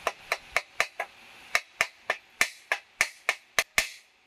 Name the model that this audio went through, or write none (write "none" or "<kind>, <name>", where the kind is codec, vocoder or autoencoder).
none